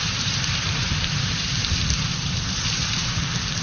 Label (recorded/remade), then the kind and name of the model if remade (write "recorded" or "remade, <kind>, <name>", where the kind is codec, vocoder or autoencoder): remade, vocoder, BigVGAN v2